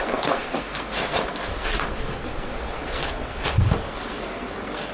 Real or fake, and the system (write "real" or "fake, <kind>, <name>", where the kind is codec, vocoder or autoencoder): fake, codec, SNAC